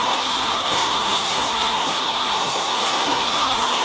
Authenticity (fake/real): fake